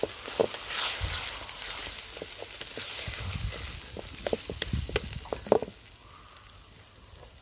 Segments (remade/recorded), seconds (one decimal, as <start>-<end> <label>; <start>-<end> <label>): 0.0-7.4 recorded